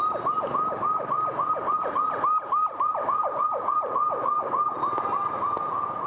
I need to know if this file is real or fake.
real